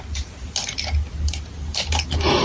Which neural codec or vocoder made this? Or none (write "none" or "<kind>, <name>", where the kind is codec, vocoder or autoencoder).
none